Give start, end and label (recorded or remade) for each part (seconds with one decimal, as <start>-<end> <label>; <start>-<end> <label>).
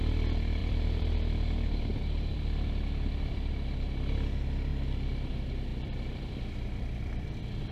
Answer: 0.0-0.6 recorded; 0.6-3.5 remade; 3.5-5.7 recorded; 5.7-7.7 remade